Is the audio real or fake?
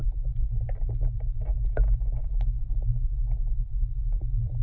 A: real